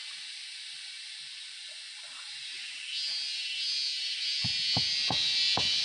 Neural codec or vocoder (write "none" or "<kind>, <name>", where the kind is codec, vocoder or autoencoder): none